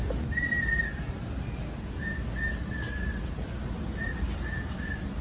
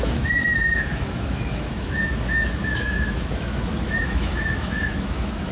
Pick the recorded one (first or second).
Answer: first